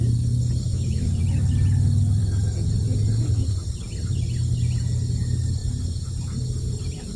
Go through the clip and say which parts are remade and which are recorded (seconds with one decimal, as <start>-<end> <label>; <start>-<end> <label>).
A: 0.0-0.7 recorded; 0.7-1.2 remade; 1.2-7.2 recorded